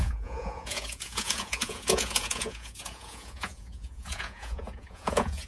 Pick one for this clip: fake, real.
fake